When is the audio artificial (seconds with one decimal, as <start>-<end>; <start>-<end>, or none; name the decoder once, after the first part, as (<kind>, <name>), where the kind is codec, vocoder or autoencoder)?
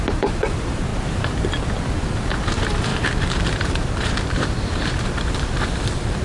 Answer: 0.0-0.9 (vocoder, BigVGAN v2); 2.5-6.2